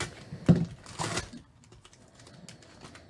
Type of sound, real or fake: real